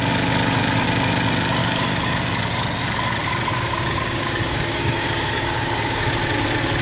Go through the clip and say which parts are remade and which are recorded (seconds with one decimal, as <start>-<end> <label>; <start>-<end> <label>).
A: 0.0-1.6 recorded; 1.6-2.2 remade; 2.2-3.5 recorded; 3.5-6.1 remade; 6.1-6.8 recorded